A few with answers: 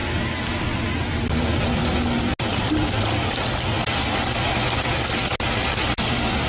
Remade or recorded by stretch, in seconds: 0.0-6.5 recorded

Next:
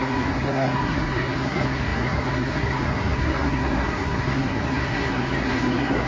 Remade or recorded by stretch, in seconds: 0.0-6.1 remade